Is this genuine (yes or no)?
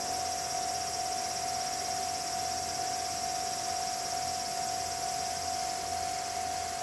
yes